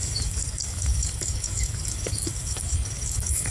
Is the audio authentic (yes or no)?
no